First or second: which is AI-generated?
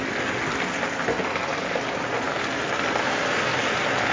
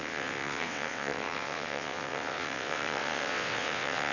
second